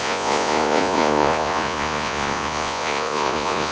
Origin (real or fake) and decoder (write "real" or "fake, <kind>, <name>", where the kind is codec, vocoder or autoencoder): fake, vocoder, Vocos